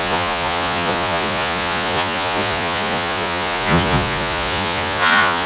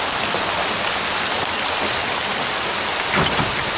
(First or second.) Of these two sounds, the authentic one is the second